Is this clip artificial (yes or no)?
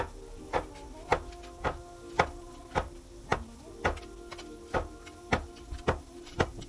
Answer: no